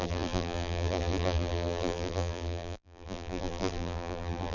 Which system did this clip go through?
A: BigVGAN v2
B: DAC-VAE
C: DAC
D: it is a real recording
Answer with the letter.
A